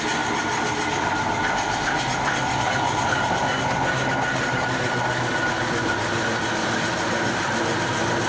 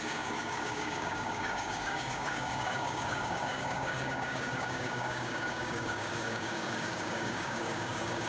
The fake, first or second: second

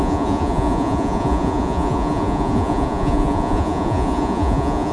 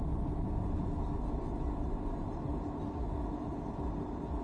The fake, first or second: first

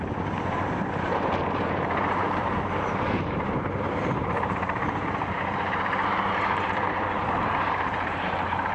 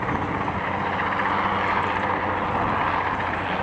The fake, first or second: first